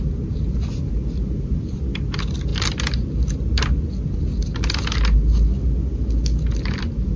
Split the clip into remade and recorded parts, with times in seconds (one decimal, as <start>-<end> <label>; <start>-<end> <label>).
0.0-7.2 recorded